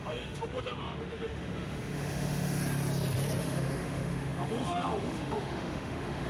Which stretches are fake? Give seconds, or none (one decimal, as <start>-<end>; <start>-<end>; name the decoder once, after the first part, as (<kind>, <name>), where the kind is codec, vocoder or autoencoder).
0.0-2.6 (autoencoder, DAC-VAE); 3.4-6.3

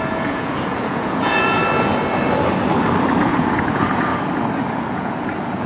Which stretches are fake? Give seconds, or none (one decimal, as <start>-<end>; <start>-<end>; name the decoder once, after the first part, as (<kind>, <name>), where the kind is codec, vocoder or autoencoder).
0.0-1.6 (vocoder, Vocos); 3.2-4.1; 4.9-5.7